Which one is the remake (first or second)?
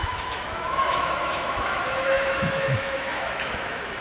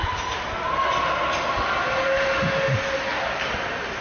first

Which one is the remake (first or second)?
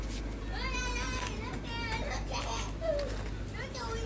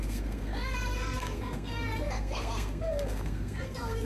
second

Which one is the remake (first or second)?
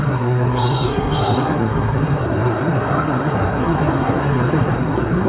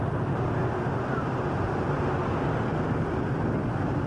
first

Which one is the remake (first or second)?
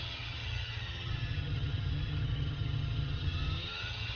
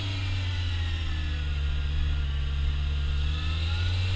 first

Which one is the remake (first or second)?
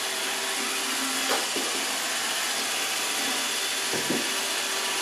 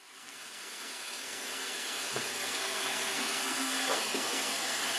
second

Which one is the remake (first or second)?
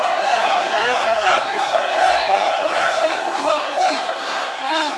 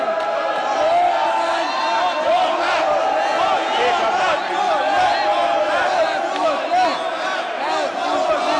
first